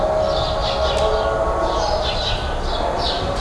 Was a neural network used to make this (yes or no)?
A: no